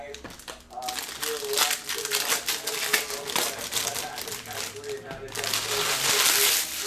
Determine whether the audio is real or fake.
real